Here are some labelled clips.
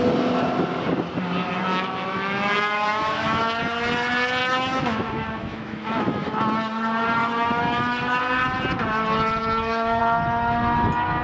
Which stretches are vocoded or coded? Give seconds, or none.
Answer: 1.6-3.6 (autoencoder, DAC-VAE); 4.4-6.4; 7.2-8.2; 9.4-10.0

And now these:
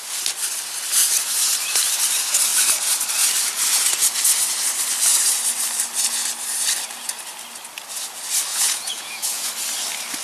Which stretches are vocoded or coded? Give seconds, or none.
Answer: 8.5-9.5 (vocoder, Vocos)

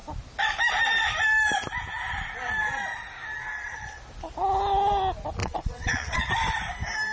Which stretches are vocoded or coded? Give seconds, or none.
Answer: 3.5-4.0 (vocoder, WaveNeXt); 5.4-6.3

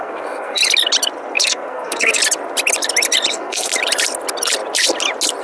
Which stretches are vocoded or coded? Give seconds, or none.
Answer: 0.0-0.6 (codec, SNAC); 1.3-2.2; 3.3-3.7

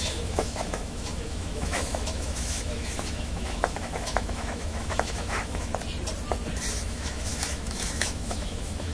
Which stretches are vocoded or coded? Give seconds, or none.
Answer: 0.0-5.7 (autoencoder, DAC-VAE); 6.7-8.9

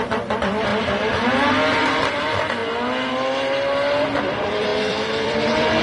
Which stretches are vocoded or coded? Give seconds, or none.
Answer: 0.0-0.7 (vocoder, BigVGAN v2); 1.8-2.6; 4.2-5.8

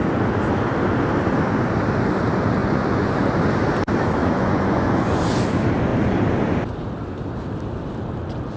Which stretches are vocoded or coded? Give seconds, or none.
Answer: 2.6-3.3 (vocoder, Vocos); 4.2-5.2

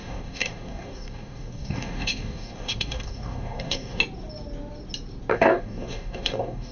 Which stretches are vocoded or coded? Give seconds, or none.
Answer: 0.0-4.0 (codec, DAC); 5.3-6.7